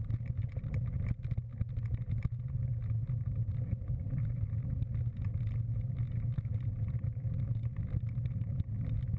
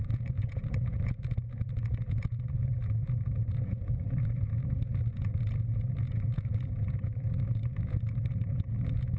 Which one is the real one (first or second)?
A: first